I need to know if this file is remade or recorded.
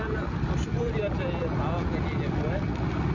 recorded